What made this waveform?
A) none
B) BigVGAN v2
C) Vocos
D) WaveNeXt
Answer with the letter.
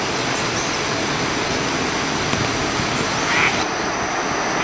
A